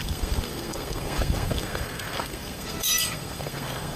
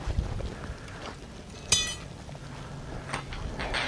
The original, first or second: second